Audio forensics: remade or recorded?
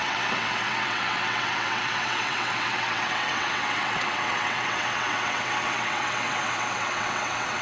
remade